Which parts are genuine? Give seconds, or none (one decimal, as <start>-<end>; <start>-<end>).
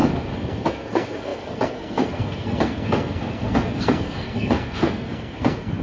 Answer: none